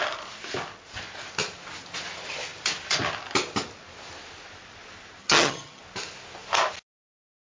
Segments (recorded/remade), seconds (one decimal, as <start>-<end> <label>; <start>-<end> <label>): 0.0-5.2 recorded; 5.2-5.8 remade; 5.8-7.5 recorded